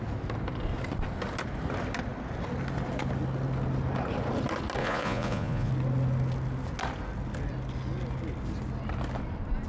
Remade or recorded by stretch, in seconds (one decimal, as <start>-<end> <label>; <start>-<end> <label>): 0.0-4.8 recorded; 4.8-5.7 remade; 5.7-9.7 recorded